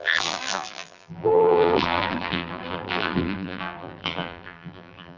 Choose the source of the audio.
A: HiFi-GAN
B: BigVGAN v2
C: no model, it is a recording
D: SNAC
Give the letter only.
B